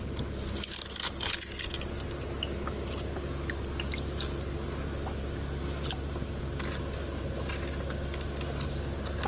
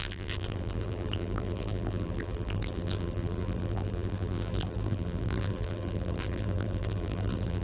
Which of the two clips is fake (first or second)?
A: second